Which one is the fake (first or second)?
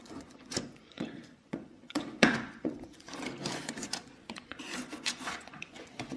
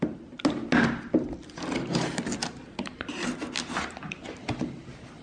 first